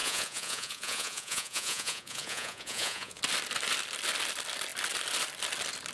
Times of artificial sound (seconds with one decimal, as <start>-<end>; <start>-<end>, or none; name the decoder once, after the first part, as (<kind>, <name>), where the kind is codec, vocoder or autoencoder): 0.0-3.2 (vocoder, Vocos)